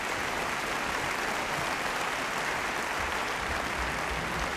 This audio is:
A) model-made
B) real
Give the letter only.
B